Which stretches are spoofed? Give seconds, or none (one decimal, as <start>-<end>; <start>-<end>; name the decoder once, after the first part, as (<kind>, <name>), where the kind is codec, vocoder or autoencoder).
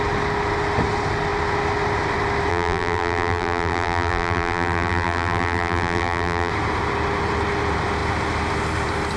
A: 2.5-6.5 (vocoder, BigVGAN v2)